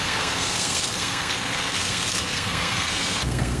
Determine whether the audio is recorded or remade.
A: remade